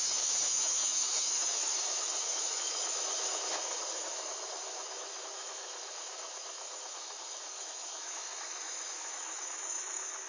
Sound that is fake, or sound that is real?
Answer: fake